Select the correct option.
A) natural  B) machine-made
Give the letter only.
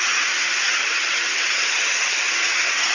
B